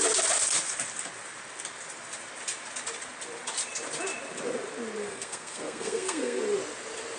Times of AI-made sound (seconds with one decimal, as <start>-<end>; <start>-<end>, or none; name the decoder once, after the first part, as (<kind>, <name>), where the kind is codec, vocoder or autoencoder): 5.0-6.4 (codec, SNAC)